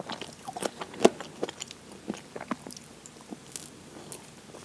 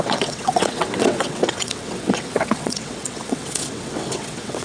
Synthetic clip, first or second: second